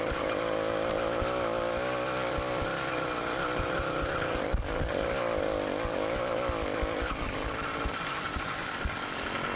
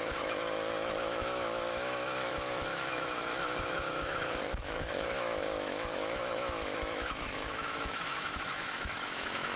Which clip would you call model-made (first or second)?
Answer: second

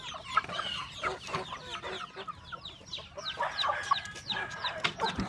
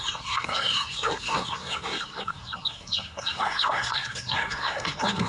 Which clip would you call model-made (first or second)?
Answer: second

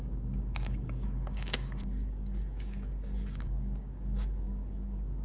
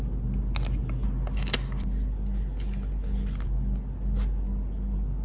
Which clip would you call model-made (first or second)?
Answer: first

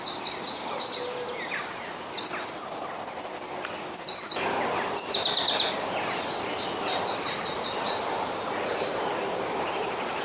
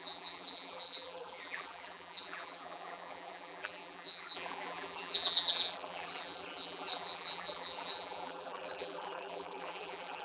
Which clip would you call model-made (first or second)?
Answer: second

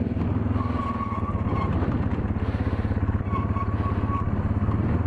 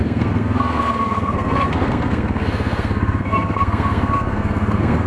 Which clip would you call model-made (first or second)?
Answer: second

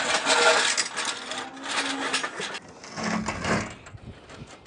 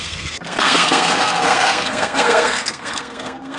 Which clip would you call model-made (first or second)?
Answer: second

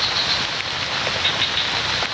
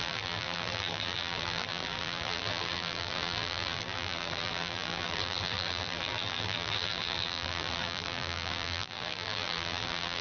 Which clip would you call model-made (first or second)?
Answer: second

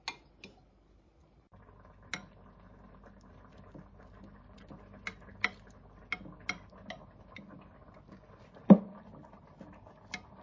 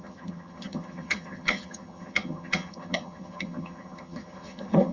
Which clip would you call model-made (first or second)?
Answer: second